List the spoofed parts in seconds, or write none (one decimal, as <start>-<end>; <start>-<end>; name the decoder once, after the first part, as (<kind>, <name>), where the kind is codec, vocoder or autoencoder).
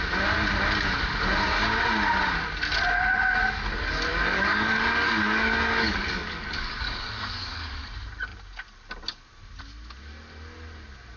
4.1-7.9 (codec, DAC)